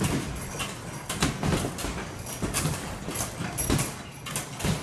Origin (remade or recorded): recorded